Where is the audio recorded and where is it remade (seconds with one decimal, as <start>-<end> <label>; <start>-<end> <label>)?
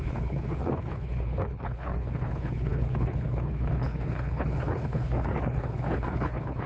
0.0-6.7 remade